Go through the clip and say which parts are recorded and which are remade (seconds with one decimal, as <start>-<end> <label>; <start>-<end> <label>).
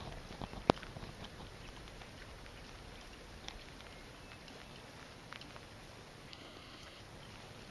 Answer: 0.0-6.3 recorded; 6.3-7.0 remade; 7.0-7.7 recorded